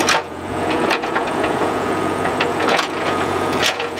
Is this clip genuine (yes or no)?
no